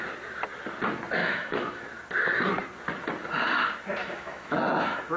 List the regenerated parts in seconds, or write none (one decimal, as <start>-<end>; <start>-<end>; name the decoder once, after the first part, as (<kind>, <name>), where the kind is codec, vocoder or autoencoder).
1.2-1.8 (autoencoder, DAC-VAE); 4.0-4.6